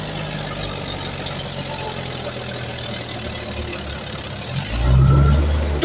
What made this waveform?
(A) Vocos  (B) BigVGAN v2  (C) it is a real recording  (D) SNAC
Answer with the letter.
C